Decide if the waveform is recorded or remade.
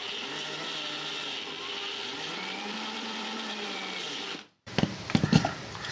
remade